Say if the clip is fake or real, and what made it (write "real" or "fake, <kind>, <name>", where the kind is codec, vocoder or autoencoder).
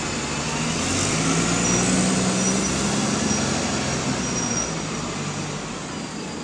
real